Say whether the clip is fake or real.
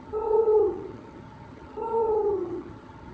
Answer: fake